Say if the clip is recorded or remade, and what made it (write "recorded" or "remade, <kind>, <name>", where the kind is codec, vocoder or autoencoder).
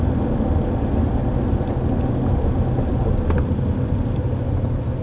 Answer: recorded